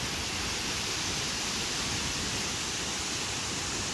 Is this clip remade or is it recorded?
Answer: recorded